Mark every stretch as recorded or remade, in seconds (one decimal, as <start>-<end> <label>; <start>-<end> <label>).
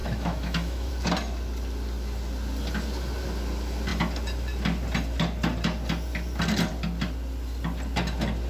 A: 0.0-0.9 remade; 0.9-8.5 recorded